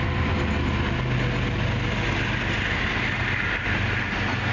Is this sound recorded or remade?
recorded